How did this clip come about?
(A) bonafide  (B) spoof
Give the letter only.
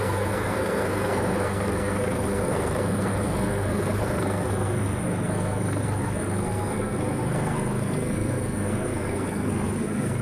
B